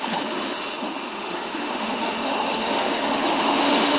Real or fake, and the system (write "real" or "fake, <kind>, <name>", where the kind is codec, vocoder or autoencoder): fake, autoencoder, DAC-VAE